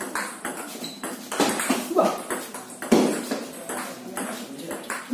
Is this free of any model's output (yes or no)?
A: yes